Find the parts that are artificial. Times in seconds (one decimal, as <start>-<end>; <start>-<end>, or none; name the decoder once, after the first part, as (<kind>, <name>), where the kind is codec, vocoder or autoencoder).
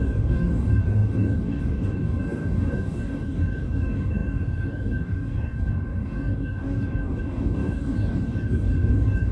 0.0-9.3 (codec, DAC)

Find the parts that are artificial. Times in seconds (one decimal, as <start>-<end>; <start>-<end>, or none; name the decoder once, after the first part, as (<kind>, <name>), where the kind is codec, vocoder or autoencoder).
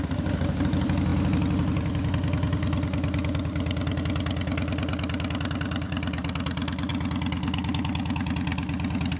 none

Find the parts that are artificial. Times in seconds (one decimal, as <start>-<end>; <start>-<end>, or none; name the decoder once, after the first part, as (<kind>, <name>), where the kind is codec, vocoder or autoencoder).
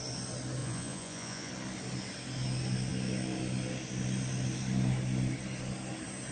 0.6-1.5 (vocoder, Vocos)